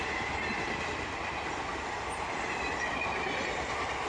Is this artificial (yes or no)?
no